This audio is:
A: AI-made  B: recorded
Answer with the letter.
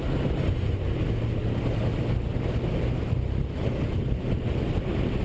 B